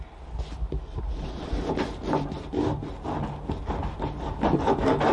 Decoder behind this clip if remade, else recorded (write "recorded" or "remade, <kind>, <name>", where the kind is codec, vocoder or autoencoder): recorded